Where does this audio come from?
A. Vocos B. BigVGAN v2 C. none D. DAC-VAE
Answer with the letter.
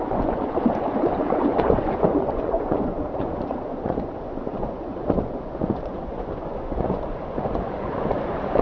A